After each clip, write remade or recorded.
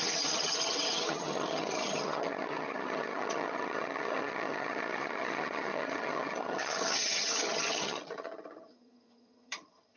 remade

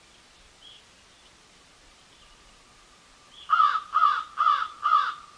recorded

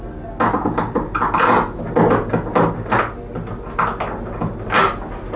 recorded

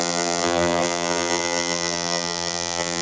remade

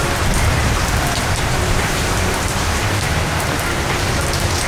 remade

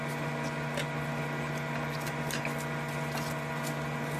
recorded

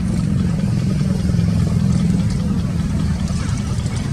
remade